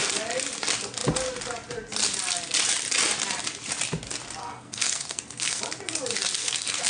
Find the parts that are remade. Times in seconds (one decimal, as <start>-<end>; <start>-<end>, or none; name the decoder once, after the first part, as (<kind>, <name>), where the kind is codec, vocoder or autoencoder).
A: 4.4-5.6 (codec, SNAC); 6.4-6.9